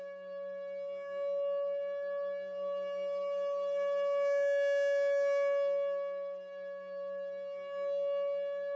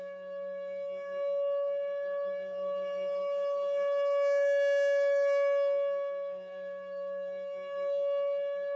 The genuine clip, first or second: first